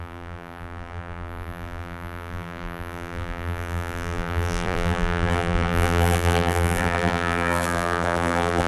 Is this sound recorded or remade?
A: remade